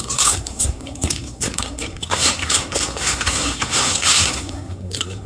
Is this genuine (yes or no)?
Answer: no